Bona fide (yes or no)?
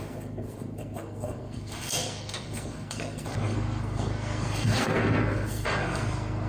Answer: no